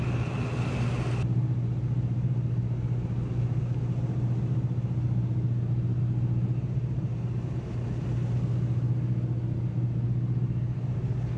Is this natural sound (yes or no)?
yes